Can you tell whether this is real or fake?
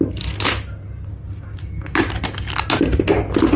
real